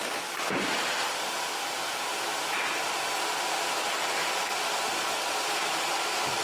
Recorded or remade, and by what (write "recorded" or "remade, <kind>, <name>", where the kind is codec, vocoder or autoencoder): recorded